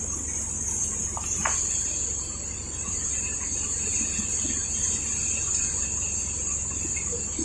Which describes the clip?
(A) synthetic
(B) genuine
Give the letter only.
B